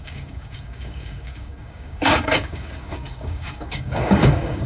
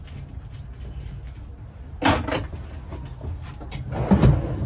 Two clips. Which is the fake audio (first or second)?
first